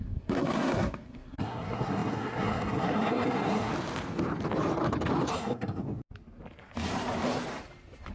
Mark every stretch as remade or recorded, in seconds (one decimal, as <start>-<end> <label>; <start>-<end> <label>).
0.0-3.7 remade; 3.7-5.3 recorded; 5.3-5.8 remade; 5.8-8.1 recorded